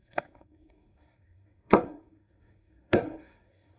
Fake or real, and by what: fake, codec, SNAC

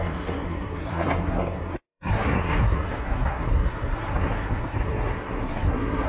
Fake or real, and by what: fake, codec, SNAC